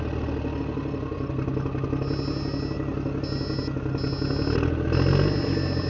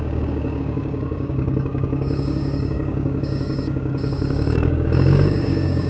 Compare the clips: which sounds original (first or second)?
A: first